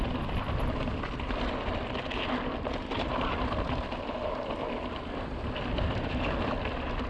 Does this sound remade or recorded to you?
recorded